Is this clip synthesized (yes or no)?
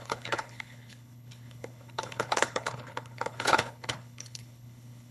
yes